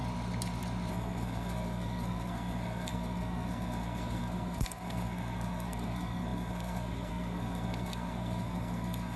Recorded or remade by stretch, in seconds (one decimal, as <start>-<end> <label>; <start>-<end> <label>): 0.0-0.9 recorded; 0.9-9.2 remade